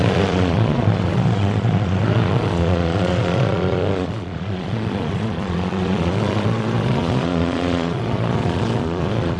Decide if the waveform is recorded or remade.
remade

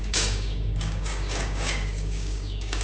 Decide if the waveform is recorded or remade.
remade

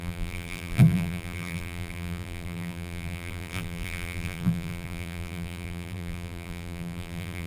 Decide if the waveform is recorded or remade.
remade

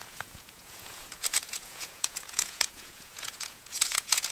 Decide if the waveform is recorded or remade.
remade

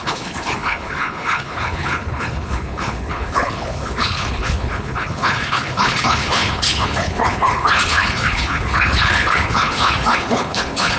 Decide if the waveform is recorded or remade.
remade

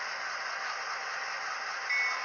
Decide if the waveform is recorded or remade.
recorded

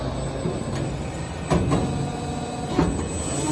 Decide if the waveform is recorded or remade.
recorded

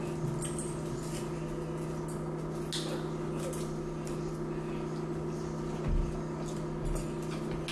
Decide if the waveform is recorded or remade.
recorded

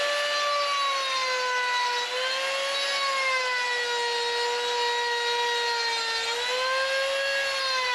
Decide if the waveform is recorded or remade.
recorded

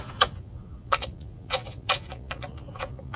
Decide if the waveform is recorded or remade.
remade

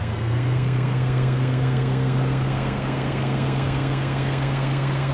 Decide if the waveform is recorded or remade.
remade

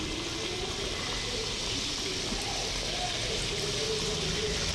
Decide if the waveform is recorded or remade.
recorded